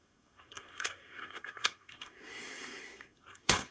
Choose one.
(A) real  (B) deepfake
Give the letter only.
B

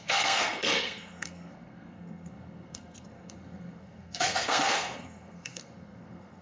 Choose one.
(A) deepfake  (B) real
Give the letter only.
A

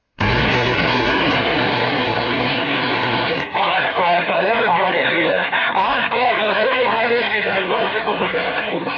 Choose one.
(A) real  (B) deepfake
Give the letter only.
B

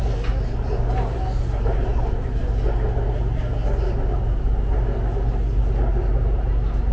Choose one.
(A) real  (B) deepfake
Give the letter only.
A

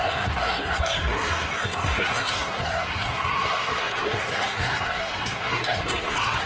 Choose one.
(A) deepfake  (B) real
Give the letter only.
A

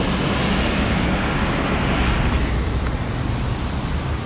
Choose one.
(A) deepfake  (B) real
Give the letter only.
B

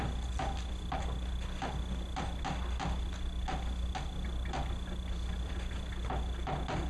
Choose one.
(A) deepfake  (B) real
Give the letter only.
B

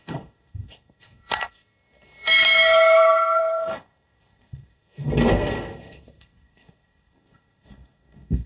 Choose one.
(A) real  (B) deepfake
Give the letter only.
B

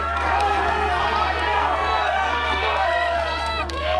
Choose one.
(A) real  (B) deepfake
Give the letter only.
B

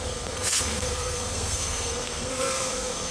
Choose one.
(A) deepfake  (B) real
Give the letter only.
A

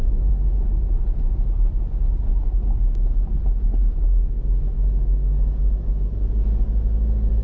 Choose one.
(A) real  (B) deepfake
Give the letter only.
A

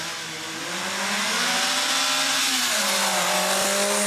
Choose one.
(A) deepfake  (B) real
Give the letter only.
B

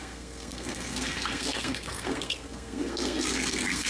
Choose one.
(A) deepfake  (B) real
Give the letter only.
A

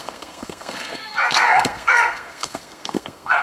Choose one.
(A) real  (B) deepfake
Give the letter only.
B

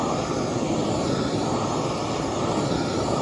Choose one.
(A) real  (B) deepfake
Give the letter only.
A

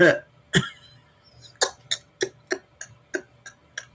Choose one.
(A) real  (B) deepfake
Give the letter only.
A